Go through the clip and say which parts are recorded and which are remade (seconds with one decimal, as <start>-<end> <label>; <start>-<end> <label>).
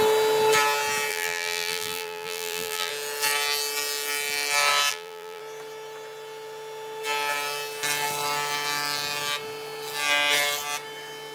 0.0-1.1 recorded; 1.1-2.9 remade; 2.9-4.9 recorded; 4.9-5.4 remade; 5.4-11.3 recorded